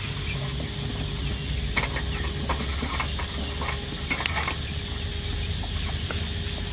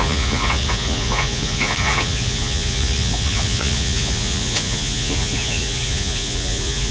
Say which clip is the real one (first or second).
first